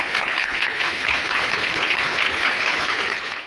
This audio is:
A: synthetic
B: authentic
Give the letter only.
A